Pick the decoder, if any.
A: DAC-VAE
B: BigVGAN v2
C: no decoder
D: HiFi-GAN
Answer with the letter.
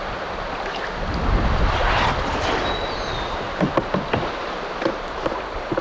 C